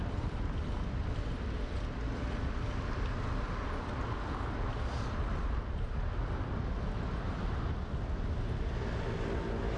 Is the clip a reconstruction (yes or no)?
no